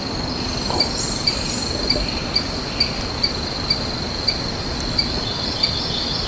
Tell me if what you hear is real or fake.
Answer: real